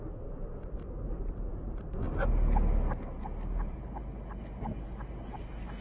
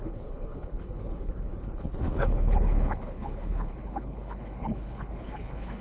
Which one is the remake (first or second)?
second